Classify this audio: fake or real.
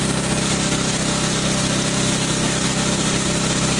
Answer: real